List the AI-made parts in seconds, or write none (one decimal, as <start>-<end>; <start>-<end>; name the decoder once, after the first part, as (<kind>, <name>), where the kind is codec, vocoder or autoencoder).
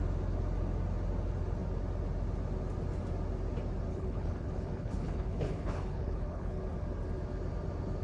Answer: 3.9-6.6 (codec, HILCodec)